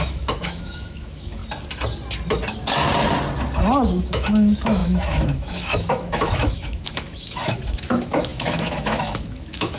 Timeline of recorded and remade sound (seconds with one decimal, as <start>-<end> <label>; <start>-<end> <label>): 0.0-1.4 remade; 1.4-4.0 recorded; 4.0-9.8 remade